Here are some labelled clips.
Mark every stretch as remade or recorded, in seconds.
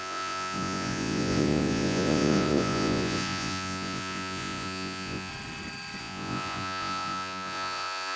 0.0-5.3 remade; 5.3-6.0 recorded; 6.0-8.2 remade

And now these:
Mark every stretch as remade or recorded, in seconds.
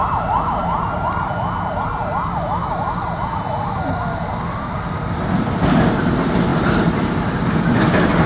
0.0-8.3 recorded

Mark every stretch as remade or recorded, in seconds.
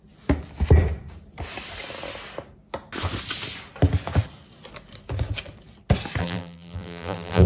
0.0-6.2 recorded; 6.2-7.5 remade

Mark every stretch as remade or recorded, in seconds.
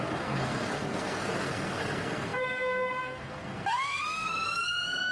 0.0-5.1 remade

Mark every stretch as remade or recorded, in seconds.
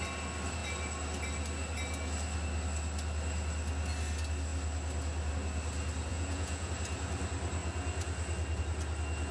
0.0-6.1 recorded; 6.1-6.7 remade; 6.7-9.3 recorded